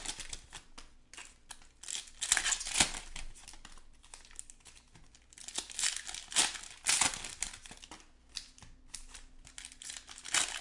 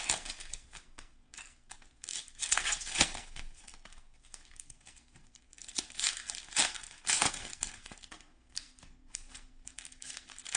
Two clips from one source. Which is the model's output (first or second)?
second